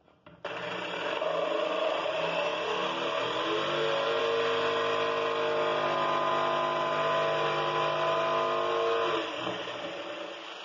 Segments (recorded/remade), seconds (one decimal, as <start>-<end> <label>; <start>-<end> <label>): 0.0-10.6 recorded